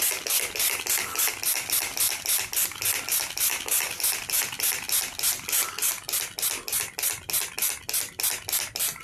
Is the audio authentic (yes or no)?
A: yes